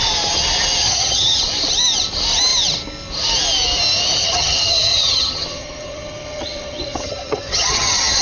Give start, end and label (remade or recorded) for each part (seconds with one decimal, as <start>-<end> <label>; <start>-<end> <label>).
0.0-0.8 recorded; 0.8-1.4 remade; 1.4-4.2 recorded; 4.2-8.2 remade